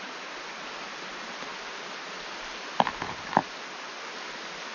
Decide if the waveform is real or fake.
real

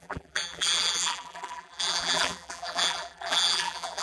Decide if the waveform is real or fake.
fake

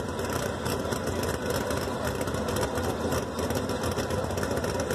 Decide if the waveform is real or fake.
real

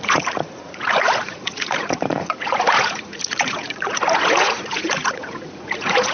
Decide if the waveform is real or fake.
fake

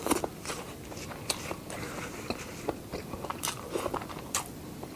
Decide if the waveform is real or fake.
real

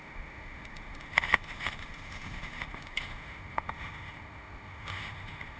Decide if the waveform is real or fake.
fake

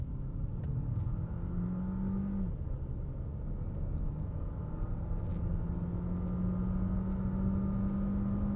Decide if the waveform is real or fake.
real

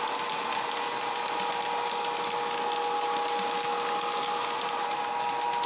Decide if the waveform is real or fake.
real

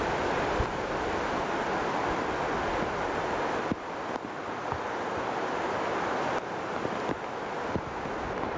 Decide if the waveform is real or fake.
real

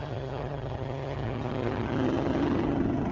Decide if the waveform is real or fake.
fake